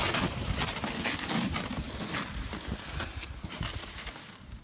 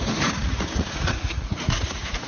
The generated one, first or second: second